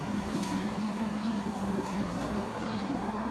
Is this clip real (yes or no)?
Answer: no